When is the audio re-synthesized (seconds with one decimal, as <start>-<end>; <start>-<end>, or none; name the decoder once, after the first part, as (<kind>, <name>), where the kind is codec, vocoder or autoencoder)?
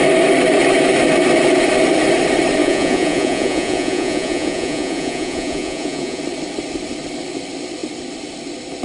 2.6-6.2 (vocoder, Vocos)